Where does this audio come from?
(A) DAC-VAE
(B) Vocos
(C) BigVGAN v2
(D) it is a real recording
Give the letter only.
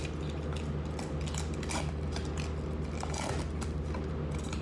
D